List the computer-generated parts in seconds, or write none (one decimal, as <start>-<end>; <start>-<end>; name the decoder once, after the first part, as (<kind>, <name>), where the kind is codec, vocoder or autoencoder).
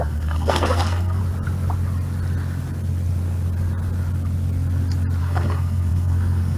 0.0-1.2 (codec, SNAC); 5.2-6.6